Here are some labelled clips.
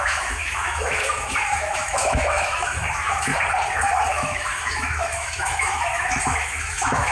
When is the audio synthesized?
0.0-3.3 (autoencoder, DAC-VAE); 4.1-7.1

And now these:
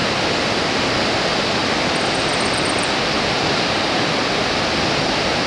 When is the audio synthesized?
0.0-0.7 (vocoder, BigVGAN v2); 1.6-4.2

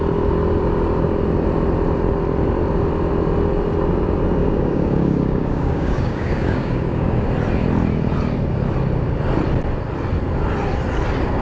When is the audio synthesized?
4.4-7.2 (codec, DAC)

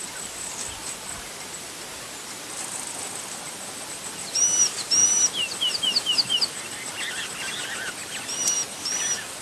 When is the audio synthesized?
none

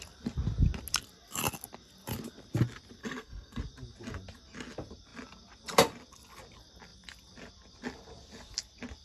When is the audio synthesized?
3.0-3.6 (codec, SNAC)

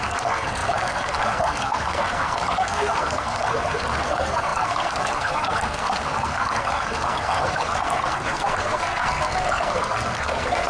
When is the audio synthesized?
0.0-10.7 (codec, SNAC)

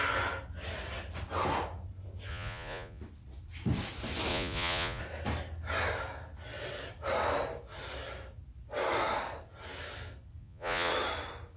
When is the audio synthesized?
2.3-3.0 (vocoder, Vocos); 4.3-5.0; 10.4-10.9